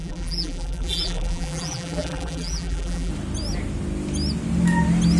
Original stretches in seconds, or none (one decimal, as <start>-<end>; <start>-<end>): 3.1-5.2